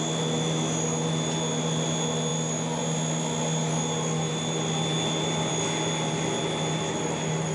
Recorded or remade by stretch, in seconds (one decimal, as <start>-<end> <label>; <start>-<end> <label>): 0.0-7.5 recorded